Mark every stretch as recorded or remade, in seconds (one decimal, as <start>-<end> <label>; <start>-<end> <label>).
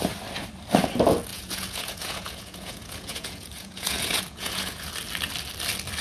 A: 0.0-1.3 recorded; 1.3-4.9 remade; 4.9-6.0 recorded